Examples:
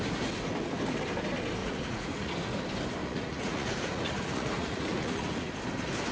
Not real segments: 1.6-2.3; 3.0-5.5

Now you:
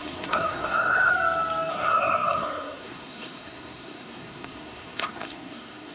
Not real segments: 0.0-1.1; 1.7-5.9

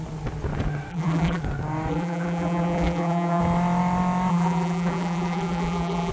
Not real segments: 0.9-1.4; 1.9-3.4; 4.3-6.1

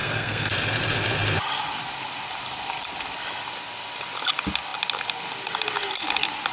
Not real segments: 0.0-0.5

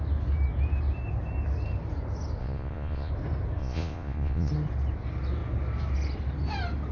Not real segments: 2.4-3.1; 3.6-4.5

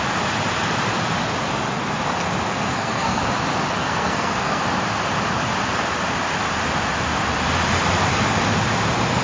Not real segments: 2.7-3.2; 3.8-4.6

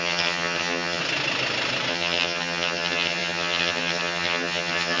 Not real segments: 0.0-1.0; 1.9-5.0